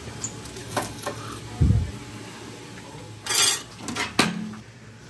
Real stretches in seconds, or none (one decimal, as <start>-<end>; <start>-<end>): 0.0-0.6; 1.4-5.1